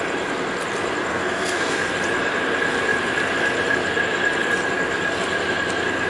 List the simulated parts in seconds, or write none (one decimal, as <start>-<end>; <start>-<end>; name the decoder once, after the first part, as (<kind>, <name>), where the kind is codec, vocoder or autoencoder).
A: 1.1-1.9 (codec, SNAC)